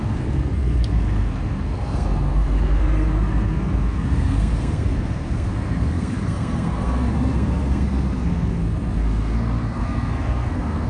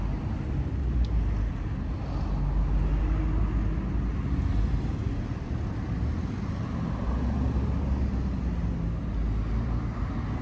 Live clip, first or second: second